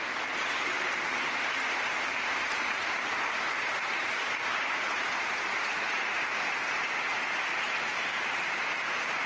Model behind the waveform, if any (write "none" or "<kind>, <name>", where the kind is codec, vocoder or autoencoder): vocoder, BigVGAN v2